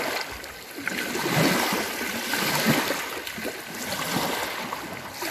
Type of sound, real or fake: real